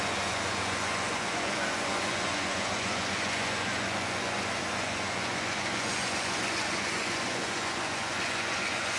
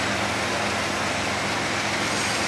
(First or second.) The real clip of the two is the second